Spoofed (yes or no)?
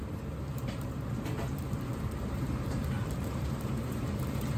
yes